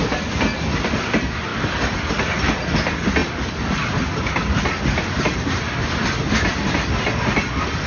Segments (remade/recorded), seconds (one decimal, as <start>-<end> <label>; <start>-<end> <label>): 0.0-7.9 recorded